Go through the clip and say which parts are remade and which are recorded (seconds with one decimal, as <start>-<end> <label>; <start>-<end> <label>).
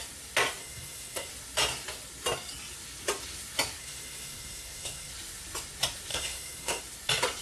0.0-0.6 recorded; 0.6-1.3 remade; 1.3-3.8 recorded; 3.8-5.1 remade; 5.1-6.1 recorded; 6.1-6.8 remade; 6.8-7.4 recorded